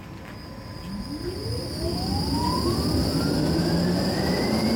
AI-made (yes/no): no